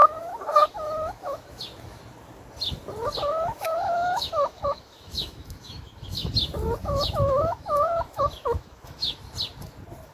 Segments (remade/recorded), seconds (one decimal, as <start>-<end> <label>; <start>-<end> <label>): 0.0-1.6 remade; 1.6-3.2 recorded; 3.2-6.3 remade; 6.3-6.8 recorded; 6.8-9.2 remade; 9.2-10.1 recorded